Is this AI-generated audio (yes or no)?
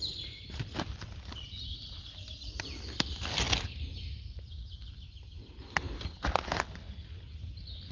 no